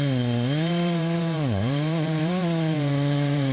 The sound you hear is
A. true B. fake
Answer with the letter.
B